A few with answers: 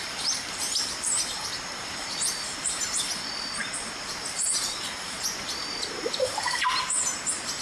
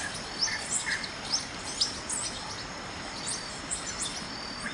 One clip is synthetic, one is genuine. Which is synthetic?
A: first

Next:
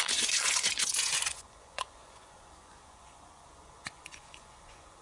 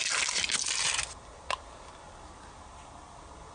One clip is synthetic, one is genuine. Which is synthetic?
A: first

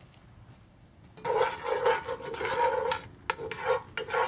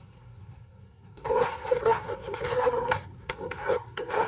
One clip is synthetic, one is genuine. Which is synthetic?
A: second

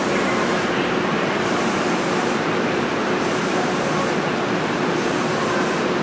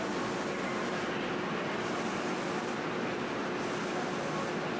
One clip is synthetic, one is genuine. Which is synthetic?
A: first